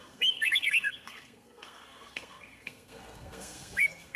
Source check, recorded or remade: remade